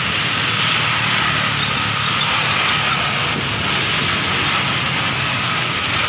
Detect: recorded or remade recorded